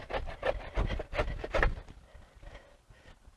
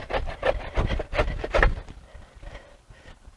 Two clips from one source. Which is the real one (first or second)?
first